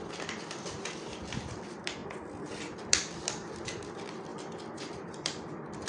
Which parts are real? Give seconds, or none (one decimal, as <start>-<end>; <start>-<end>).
2.0-2.9; 4.3-4.9